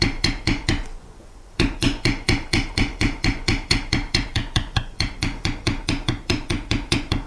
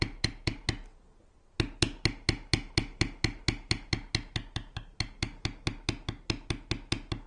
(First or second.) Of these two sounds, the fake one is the first